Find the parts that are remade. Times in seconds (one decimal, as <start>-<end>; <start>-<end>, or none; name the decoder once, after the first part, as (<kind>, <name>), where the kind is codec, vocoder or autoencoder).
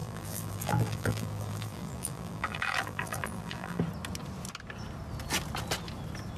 0.0-3.8 (vocoder, BigVGAN v2)